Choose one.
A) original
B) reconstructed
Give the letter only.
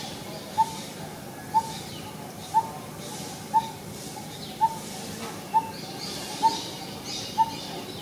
A